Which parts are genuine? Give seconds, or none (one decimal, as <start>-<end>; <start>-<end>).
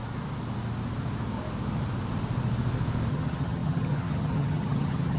0.0-3.1